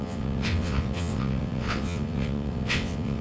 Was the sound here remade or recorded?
remade